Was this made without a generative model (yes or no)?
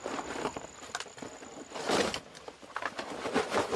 yes